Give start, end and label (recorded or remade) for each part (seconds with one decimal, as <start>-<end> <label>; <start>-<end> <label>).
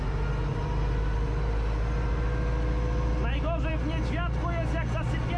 0.0-5.4 recorded